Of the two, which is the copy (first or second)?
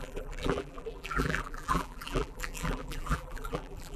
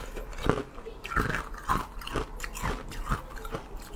first